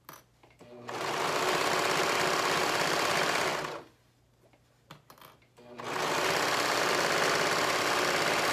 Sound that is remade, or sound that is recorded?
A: recorded